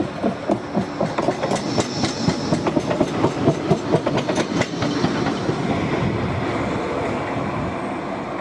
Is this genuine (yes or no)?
yes